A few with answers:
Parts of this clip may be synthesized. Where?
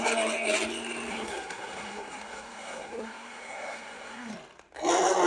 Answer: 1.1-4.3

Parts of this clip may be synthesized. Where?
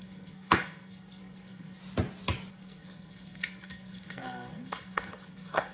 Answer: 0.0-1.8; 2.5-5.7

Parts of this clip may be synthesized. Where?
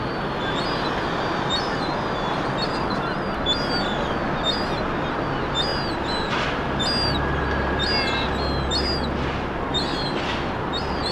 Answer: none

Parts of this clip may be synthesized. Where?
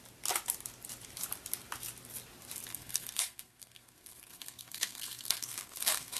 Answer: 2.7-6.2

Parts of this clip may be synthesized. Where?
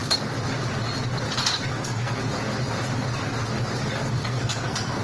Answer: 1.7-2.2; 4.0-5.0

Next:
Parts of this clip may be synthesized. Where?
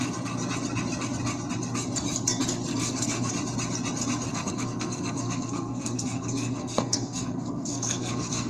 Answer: 2.7-3.3; 4.3-8.5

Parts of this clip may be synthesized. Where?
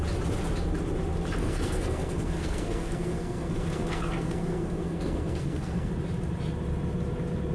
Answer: 1.4-5.9